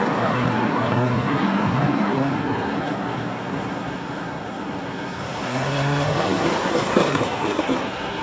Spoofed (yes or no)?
yes